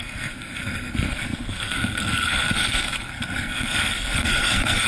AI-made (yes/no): yes